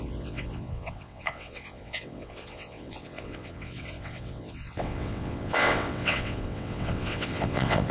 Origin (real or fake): fake